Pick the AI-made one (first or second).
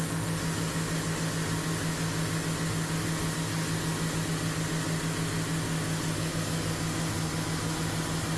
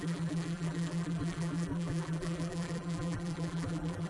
second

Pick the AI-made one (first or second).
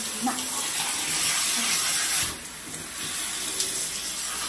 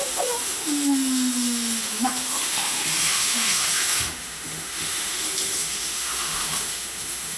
second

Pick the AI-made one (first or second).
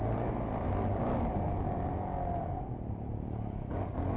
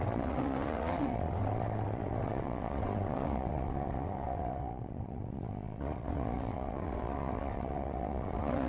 second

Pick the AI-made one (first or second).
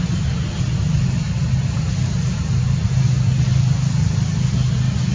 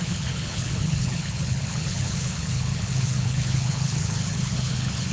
second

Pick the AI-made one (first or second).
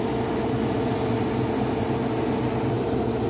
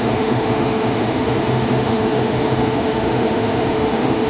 second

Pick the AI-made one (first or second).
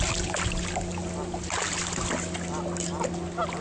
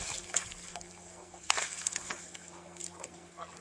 second